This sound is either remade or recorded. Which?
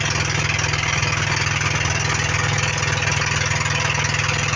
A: recorded